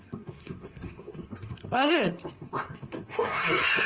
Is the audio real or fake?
fake